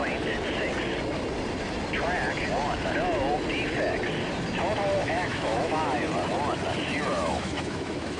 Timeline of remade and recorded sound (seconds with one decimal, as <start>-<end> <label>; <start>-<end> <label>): 0.0-5.0 recorded; 5.0-6.0 remade; 6.0-7.1 recorded; 7.1-8.2 remade